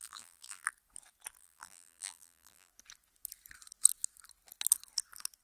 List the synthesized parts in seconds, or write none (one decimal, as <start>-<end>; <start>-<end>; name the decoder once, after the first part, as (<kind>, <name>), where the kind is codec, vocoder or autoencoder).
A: 0.0-0.7 (vocoder, BigVGAN v2); 1.4-2.7